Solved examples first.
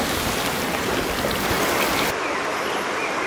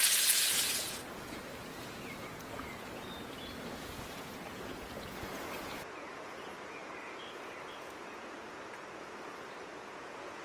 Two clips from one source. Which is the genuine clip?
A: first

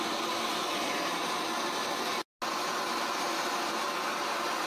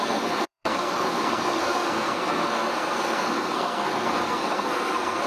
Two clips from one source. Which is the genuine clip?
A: first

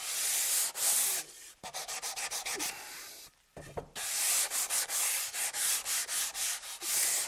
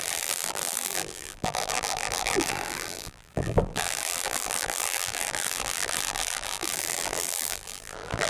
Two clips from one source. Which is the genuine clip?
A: first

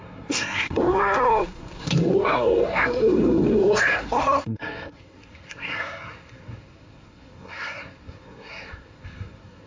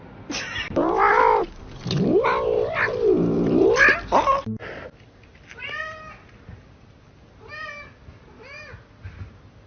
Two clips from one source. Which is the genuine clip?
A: second